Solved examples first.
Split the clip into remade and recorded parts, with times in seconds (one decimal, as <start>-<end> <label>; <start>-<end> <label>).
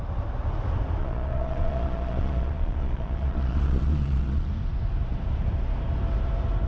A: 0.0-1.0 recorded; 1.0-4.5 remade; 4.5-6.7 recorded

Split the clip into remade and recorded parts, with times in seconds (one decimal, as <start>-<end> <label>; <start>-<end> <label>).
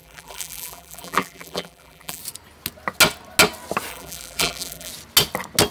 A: 0.0-2.2 remade; 2.2-3.9 recorded; 3.9-4.9 remade; 4.9-5.7 recorded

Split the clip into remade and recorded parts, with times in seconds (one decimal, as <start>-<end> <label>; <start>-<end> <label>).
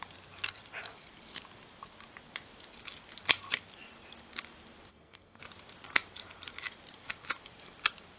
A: 0.0-4.9 recorded; 4.9-5.4 remade; 5.4-8.2 recorded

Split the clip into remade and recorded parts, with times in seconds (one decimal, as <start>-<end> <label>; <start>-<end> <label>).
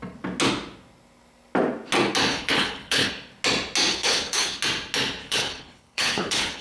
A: 0.0-2.3 recorded; 2.3-3.1 remade; 3.1-3.9 recorded; 3.9-4.6 remade; 4.6-5.2 recorded; 5.2-6.6 remade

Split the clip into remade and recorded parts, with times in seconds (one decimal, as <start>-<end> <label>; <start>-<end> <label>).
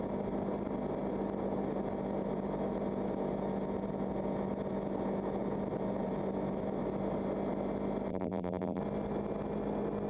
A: 0.0-8.1 recorded; 8.1-8.8 remade; 8.8-10.1 recorded